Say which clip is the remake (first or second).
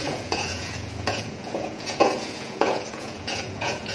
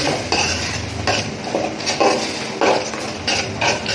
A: first